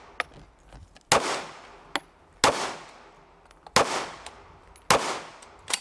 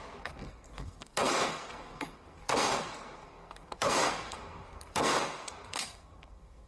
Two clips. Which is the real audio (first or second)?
first